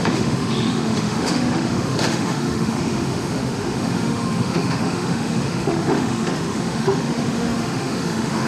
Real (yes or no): no